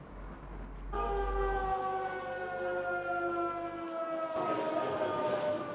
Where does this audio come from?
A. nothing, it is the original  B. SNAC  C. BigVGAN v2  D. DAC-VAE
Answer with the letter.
A